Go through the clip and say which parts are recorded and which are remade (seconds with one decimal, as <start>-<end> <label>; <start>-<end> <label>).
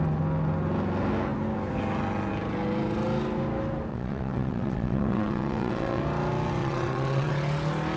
0.0-3.9 recorded; 3.9-6.0 remade; 6.0-6.6 recorded; 6.6-7.3 remade; 7.3-8.0 recorded